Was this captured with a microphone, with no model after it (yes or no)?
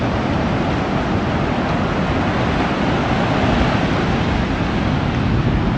yes